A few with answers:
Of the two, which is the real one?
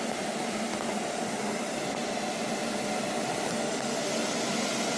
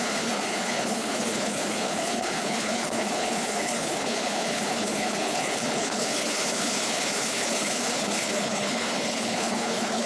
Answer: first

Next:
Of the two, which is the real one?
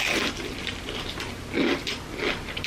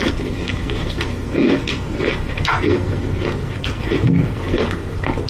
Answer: first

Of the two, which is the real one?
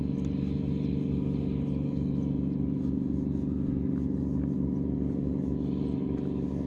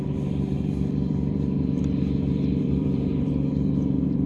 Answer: first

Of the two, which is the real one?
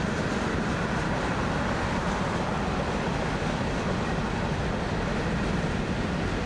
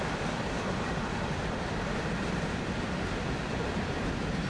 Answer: first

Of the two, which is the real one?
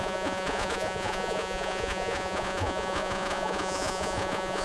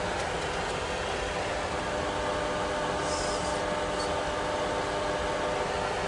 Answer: second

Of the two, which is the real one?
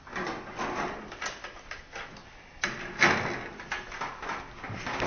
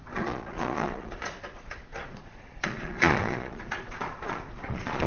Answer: first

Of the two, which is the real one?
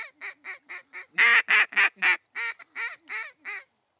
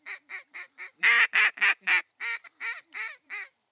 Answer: first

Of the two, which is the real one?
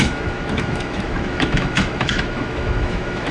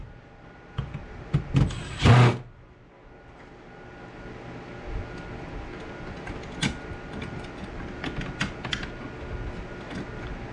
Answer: second